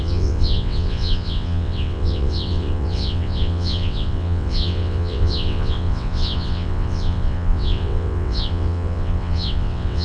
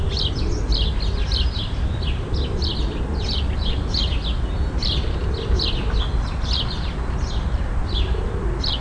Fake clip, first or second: first